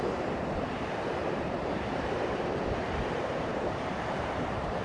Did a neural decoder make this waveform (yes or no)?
yes